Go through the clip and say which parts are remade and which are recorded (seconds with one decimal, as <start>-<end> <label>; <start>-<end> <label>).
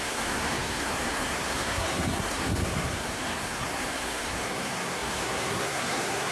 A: 0.0-6.3 remade